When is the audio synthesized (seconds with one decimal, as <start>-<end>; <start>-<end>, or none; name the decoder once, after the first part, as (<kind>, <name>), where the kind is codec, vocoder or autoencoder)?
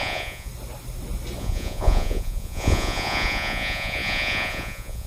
0.0-0.5 (vocoder, Vocos); 1.4-5.1